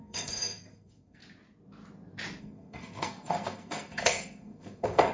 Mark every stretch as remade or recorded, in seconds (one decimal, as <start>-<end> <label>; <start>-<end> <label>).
0.0-1.2 remade; 1.2-2.4 recorded; 2.4-5.1 remade